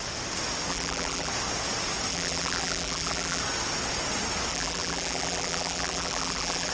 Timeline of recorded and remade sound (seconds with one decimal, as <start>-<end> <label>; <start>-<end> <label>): 0.0-0.7 recorded; 0.7-1.3 remade; 1.3-2.1 recorded; 2.1-3.4 remade; 3.4-4.5 recorded; 4.5-6.7 remade